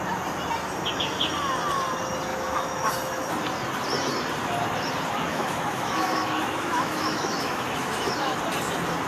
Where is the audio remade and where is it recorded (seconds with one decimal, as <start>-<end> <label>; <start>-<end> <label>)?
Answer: 0.0-2.3 recorded; 2.3-2.9 remade; 2.9-5.3 recorded; 5.3-8.4 remade; 8.4-9.1 recorded